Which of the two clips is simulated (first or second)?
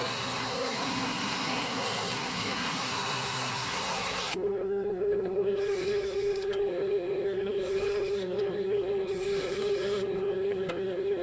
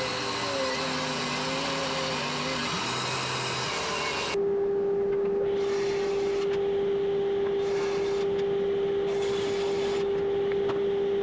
first